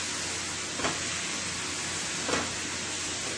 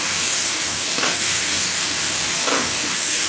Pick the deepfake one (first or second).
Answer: second